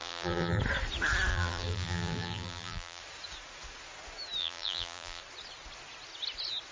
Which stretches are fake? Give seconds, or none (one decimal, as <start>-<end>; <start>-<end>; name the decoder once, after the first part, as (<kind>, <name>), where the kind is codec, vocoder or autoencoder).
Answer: 0.0-0.6 (vocoder, BigVGAN v2); 1.3-3.0; 4.4-5.2